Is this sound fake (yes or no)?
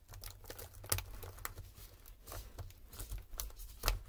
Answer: no